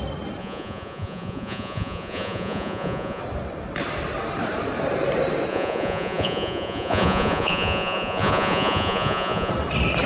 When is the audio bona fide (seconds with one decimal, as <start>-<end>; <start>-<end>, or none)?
0.0-0.4; 3.2-5.5; 9.5-10.1